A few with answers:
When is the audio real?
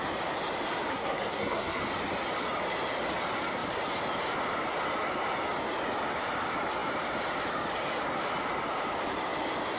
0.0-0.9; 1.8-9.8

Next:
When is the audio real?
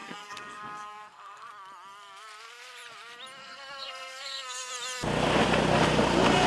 1.5-3.4; 4.7-6.5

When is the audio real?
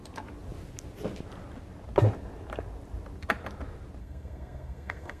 0.0-4.0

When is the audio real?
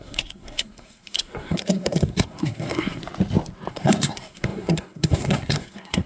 3.0-3.7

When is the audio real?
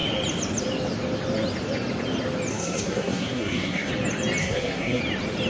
0.0-2.5; 3.9-4.4; 5.0-5.5